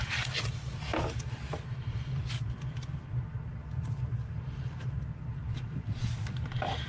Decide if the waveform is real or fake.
fake